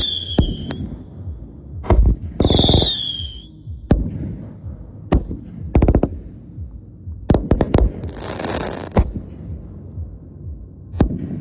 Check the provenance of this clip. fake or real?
real